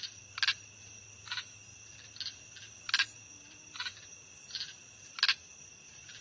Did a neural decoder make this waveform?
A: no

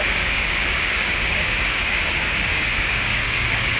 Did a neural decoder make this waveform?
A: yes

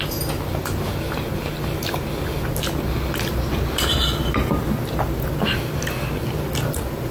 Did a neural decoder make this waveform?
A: no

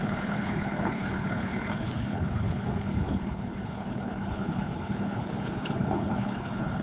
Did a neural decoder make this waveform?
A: yes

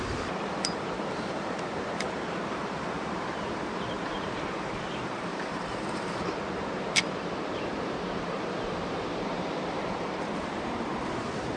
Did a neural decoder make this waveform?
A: yes